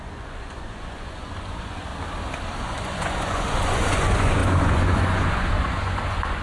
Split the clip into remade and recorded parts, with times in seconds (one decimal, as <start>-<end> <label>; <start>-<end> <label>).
0.0-1.9 remade; 1.9-2.6 recorded; 2.6-6.4 remade